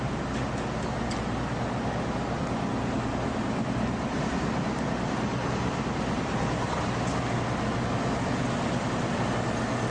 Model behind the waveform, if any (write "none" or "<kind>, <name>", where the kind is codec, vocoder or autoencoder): none